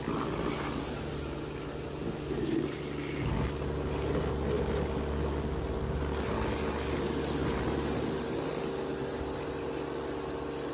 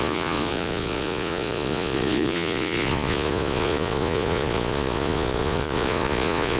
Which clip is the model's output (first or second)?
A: second